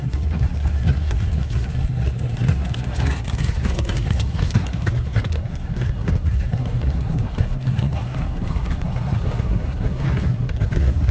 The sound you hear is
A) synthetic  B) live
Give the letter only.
A